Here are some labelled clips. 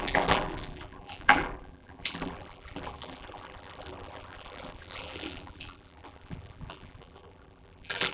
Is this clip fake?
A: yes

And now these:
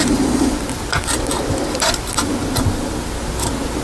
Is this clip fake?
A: no